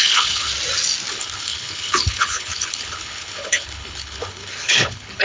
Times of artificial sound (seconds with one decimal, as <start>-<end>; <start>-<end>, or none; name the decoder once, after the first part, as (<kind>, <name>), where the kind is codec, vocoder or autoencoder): 0.0-0.5 (codec, HILCodec); 1.1-5.2